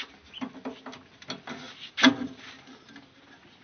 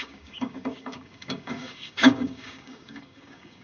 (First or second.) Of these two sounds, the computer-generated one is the second